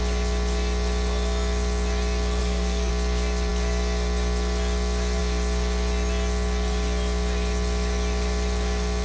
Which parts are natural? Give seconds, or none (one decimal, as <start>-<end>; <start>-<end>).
0.0-2.4; 2.9-9.0